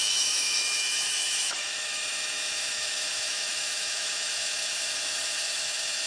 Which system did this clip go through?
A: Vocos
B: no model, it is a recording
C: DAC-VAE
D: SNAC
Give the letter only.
C